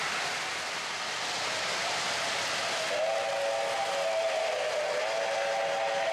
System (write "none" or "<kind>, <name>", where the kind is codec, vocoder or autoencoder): none